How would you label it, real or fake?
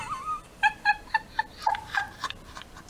fake